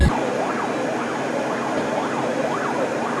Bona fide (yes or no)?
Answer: yes